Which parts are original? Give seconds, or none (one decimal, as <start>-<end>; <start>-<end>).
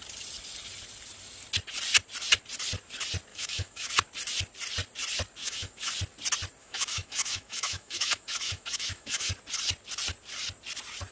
0.0-3.3; 3.9-5.4; 5.9-6.6; 9.3-11.1